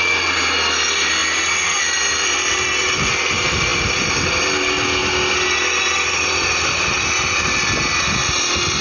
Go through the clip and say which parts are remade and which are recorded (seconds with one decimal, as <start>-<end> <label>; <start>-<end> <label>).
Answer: 0.0-8.8 recorded